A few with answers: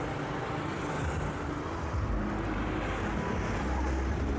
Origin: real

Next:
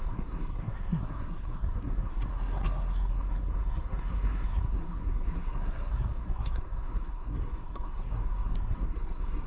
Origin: fake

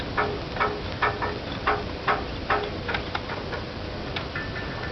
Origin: real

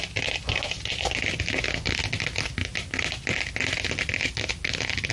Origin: real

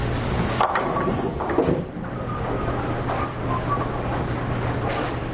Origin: real